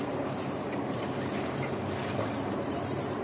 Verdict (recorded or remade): remade